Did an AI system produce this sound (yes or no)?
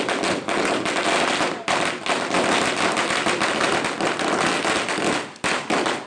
no